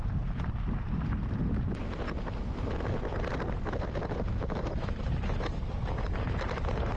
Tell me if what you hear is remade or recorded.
recorded